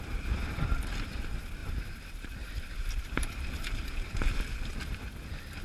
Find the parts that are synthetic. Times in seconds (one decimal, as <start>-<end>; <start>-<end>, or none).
1.6-4.4